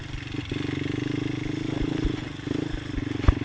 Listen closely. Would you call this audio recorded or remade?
recorded